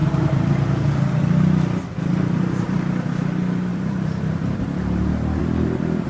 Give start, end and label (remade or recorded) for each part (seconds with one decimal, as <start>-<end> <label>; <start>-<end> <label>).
0.0-1.3 remade; 1.3-2.1 recorded; 2.1-3.1 remade; 3.1-3.7 recorded; 3.7-5.4 remade; 5.4-6.1 recorded

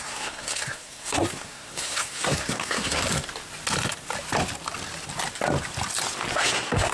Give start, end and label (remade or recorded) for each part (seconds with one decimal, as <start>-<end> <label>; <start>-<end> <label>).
0.0-3.0 remade; 3.0-6.3 recorded; 6.3-6.9 remade